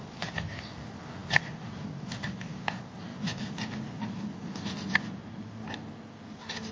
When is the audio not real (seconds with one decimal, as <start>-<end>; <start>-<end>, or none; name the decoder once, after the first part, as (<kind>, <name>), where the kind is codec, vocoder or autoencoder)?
none